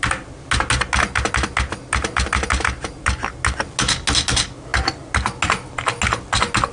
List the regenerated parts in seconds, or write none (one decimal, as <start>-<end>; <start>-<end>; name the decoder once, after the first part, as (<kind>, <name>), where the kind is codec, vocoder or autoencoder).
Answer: none